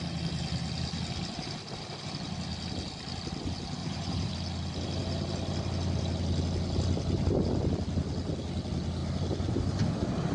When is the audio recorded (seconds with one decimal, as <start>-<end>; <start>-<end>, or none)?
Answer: 0.0-3.8; 4.3-10.3